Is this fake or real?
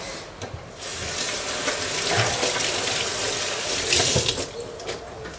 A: real